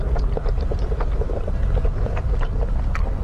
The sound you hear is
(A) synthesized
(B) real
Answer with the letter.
A